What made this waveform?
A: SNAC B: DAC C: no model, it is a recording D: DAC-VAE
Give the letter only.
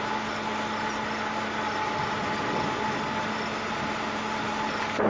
C